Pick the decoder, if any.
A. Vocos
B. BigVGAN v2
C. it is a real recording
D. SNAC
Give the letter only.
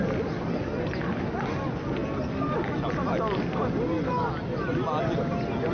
C